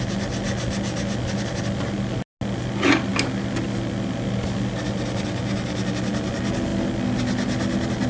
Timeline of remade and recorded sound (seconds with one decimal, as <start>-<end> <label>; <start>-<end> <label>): 0.0-8.1 recorded